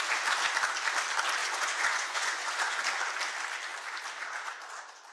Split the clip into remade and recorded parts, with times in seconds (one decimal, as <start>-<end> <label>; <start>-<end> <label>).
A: 0.0-1.4 recorded; 1.4-2.8 remade; 2.8-5.1 recorded